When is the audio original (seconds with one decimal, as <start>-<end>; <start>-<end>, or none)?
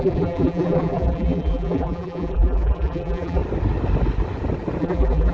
3.4-4.8